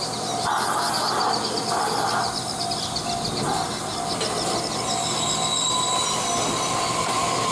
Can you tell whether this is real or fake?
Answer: real